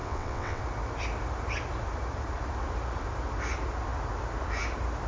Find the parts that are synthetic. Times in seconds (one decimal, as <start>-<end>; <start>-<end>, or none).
0.0-0.6

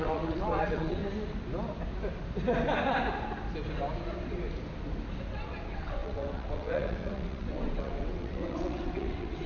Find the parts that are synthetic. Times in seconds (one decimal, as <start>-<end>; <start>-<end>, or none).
0.0-1.0; 5.3-9.5

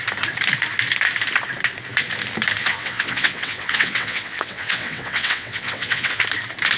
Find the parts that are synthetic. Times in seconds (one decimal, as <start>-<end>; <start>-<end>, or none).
2.6-6.2